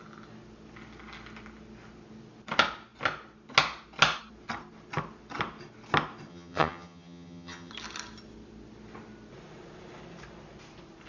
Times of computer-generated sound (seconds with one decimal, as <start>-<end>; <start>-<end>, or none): 6.3-7.7